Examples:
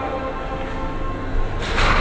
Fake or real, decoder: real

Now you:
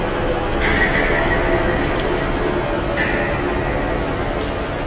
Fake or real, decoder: real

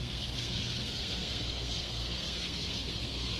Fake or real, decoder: fake, codec, SNAC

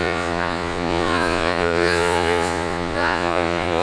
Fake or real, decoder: fake, vocoder, Vocos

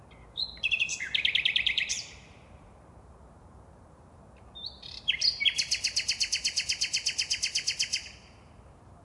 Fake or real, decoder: fake, vocoder, BigVGAN v2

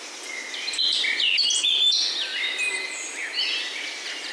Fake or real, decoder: real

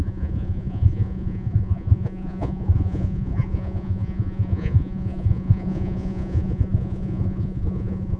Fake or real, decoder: fake, vocoder, Vocos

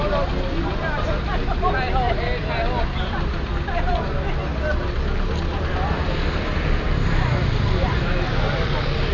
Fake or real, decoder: real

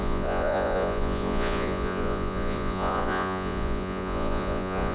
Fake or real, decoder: fake, vocoder, Vocos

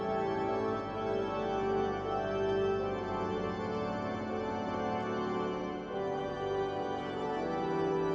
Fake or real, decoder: real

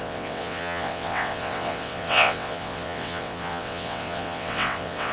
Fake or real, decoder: fake, vocoder, WaveNeXt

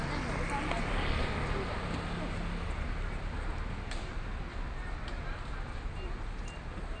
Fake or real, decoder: real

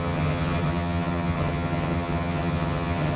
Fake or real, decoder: fake, vocoder, HiFi-GAN